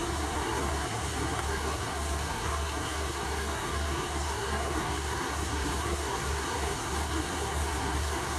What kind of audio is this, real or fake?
fake